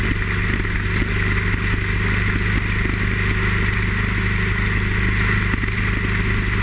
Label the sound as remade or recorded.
recorded